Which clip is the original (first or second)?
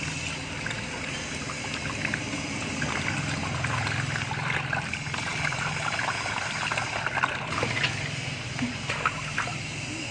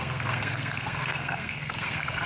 first